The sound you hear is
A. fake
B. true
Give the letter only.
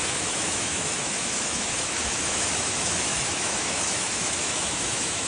A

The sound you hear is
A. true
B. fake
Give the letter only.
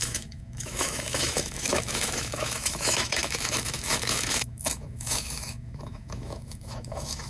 B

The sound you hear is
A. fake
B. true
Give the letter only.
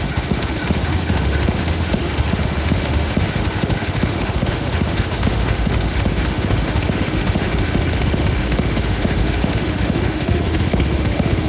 A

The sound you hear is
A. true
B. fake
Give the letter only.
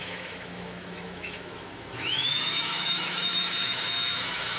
B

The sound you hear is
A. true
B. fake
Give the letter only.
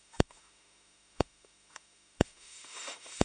B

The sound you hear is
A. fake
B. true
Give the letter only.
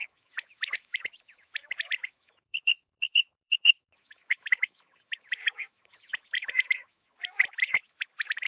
A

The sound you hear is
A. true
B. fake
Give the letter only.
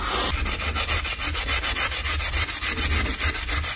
A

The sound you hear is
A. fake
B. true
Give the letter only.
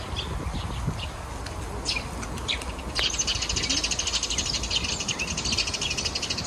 B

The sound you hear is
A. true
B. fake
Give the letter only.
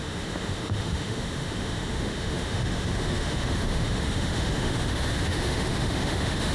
B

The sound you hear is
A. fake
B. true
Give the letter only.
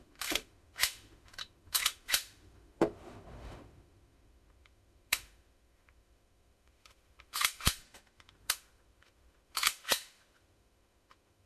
A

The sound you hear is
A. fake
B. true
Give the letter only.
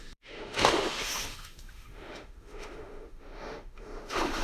A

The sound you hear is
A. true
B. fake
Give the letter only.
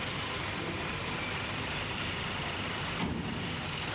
A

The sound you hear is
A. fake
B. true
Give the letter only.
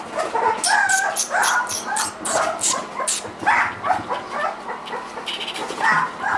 B